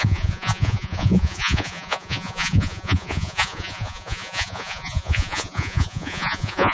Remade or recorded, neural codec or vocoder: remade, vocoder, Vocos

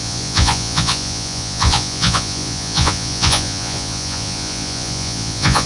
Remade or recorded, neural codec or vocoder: remade, vocoder, Vocos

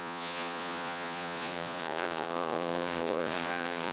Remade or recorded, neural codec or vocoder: remade, vocoder, Vocos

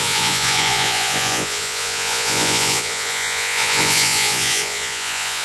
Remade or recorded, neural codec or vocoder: remade, vocoder, Vocos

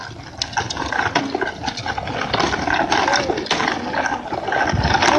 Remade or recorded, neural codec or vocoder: recorded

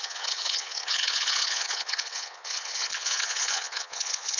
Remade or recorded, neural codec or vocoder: remade, vocoder, Vocos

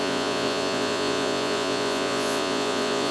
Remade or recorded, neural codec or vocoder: remade, vocoder, Vocos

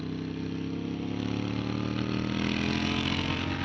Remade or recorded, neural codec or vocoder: recorded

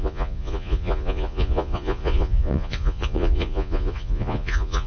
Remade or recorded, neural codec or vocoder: remade, vocoder, Vocos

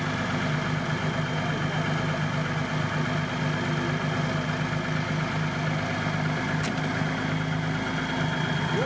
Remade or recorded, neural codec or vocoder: recorded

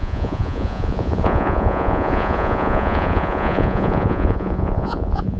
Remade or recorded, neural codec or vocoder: remade, vocoder, Vocos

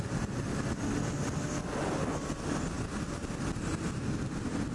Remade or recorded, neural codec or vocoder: recorded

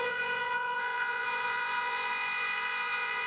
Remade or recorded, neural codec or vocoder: remade, vocoder, Vocos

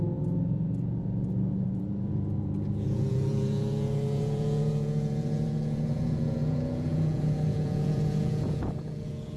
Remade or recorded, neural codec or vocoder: remade, vocoder, Vocos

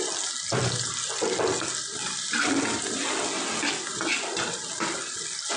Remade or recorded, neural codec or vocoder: recorded